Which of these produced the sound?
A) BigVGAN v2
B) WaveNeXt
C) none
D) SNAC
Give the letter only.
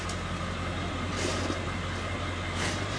C